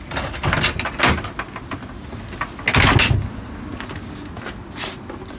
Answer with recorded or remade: recorded